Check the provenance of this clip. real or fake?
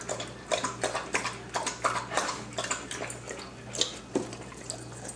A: real